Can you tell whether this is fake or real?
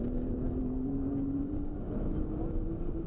fake